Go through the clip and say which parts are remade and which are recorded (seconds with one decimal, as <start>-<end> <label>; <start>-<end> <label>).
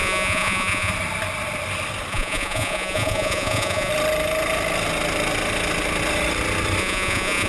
0.0-0.9 remade; 0.9-2.1 recorded; 2.1-3.9 remade; 3.9-6.8 recorded; 6.8-7.5 remade